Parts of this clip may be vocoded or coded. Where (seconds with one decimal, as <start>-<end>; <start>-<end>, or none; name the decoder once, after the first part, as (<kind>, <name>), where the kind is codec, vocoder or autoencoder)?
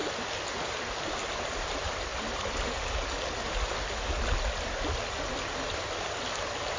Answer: none